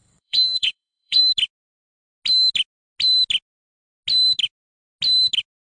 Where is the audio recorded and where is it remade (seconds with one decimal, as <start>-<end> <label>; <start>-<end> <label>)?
0.0-1.2 remade; 1.2-5.7 recorded